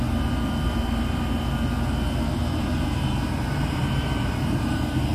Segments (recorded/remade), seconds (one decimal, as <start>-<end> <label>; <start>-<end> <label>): 0.0-2.4 recorded; 2.4-5.1 remade